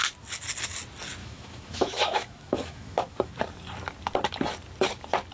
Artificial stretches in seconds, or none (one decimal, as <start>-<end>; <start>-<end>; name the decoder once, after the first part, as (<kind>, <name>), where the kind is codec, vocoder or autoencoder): 1.2-3.3 (autoencoder, DAC-VAE)